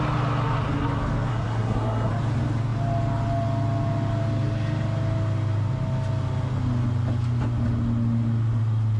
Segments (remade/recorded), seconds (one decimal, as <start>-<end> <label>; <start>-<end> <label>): 0.0-1.3 recorded; 1.3-2.1 remade; 2.1-9.0 recorded